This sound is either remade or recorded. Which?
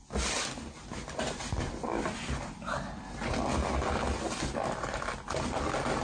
recorded